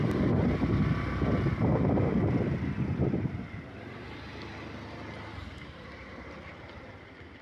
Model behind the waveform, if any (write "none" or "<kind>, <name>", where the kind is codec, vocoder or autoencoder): none